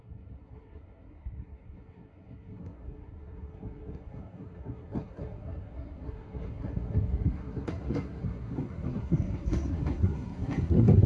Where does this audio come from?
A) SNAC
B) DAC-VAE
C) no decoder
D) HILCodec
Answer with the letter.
A